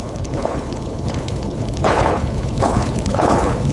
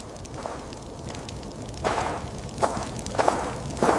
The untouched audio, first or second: second